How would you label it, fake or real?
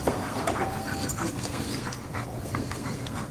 fake